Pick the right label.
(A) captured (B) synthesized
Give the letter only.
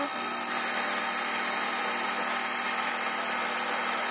A